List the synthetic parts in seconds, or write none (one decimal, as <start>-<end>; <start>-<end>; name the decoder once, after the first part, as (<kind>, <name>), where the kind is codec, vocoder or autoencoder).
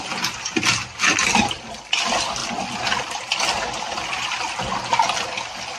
none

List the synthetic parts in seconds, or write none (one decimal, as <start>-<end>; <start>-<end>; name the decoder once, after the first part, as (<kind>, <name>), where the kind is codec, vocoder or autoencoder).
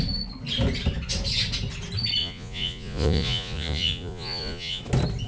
2.2-4.8 (vocoder, Vocos)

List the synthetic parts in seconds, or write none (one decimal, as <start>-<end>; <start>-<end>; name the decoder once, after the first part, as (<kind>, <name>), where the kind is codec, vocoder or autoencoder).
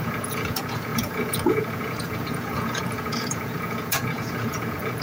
0.0-5.0 (vocoder, Vocos)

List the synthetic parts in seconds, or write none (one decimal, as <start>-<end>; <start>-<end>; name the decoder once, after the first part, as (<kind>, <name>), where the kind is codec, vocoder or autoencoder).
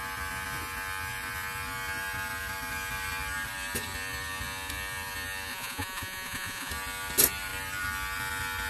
5.5-6.7 (vocoder, Vocos)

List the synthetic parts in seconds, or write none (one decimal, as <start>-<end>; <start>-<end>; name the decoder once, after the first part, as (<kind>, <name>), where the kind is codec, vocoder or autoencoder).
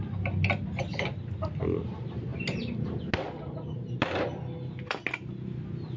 none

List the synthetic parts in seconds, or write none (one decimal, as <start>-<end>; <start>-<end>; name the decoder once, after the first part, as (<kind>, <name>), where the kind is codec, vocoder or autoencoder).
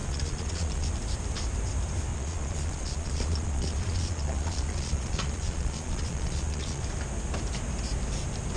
0.0-0.9 (vocoder, Vocos); 2.1-6.8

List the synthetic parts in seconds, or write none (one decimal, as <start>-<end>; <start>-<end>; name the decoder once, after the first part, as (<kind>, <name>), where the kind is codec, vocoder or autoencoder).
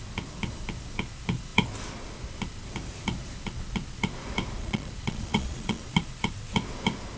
4.6-6.0 (vocoder, Vocos)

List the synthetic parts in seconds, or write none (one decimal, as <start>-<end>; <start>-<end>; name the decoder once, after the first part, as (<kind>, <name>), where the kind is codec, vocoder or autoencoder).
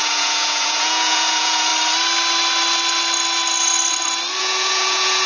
0.0-1.7 (vocoder, Vocos); 4.4-5.3